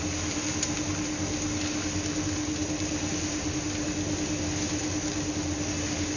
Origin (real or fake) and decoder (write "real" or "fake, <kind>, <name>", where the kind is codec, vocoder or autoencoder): real